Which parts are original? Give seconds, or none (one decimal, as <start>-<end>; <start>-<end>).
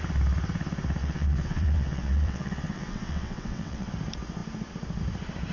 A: 0.0-1.0; 3.9-5.5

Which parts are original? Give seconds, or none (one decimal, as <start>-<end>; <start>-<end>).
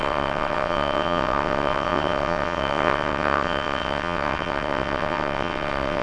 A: none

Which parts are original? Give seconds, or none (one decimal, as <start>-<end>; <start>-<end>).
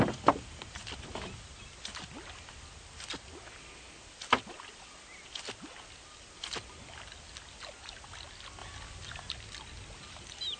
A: 0.0-10.6